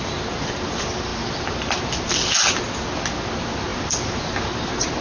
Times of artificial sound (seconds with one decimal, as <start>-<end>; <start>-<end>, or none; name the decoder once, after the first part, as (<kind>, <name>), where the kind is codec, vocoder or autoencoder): none